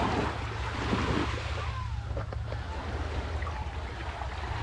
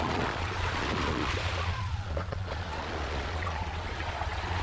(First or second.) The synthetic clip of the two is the second